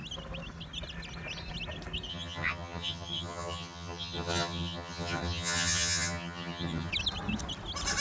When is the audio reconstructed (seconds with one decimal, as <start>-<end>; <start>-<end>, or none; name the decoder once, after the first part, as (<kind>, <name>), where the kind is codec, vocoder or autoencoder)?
2.1-6.9 (vocoder, HiFi-GAN)